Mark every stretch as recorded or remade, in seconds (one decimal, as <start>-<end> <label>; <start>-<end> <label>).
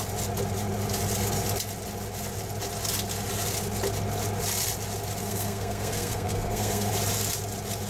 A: 0.0-5.2 recorded; 5.2-6.9 remade; 6.9-7.9 recorded